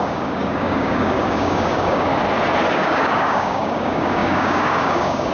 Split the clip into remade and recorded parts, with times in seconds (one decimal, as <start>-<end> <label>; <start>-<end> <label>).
0.0-2.1 remade; 2.1-2.7 recorded; 2.7-5.3 remade